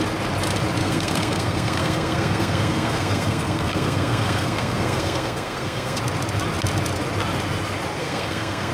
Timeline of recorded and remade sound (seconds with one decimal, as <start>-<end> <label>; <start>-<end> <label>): 0.0-0.8 recorded; 0.8-6.0 remade; 6.0-8.0 recorded; 8.0-8.7 remade